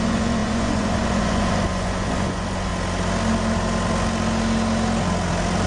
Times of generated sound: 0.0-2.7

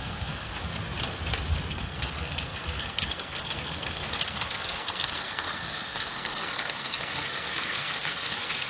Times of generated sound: 0.0-0.5; 1.7-8.7

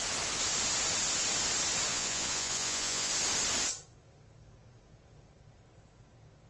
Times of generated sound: 1.9-3.1

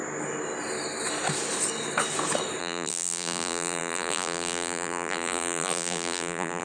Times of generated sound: 2.6-6.6

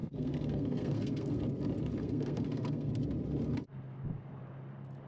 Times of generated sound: 0.0-1.4; 2.0-2.9